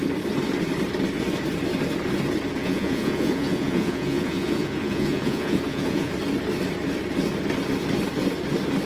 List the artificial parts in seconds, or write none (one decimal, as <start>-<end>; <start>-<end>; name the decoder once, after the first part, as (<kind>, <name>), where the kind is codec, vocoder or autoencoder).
2.6-6.1 (vocoder, Vocos)